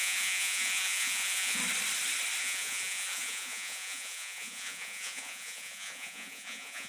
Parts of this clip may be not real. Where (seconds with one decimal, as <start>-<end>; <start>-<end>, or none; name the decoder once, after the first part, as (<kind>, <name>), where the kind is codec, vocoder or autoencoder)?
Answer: 0.0-1.6 (vocoder, Vocos); 2.4-6.9